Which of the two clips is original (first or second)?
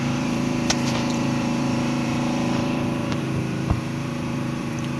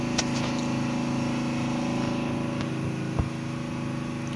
second